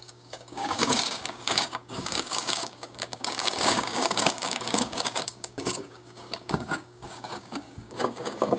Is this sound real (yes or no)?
no